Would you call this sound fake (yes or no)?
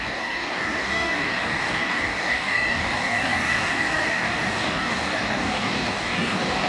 yes